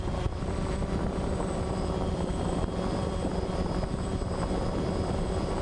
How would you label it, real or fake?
fake